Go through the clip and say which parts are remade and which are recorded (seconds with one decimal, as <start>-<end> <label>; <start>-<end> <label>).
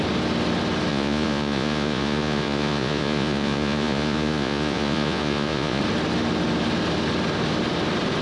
0.0-0.9 recorded; 0.9-5.8 remade; 5.8-8.2 recorded